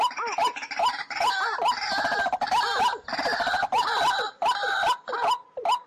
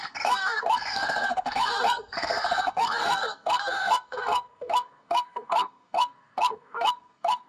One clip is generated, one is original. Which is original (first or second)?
first